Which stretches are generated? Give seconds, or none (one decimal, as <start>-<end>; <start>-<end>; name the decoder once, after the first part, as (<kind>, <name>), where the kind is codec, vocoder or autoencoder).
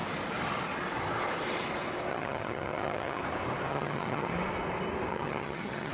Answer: 2.1-3.2 (vocoder, HiFi-GAN); 3.7-4.3; 5.1-5.9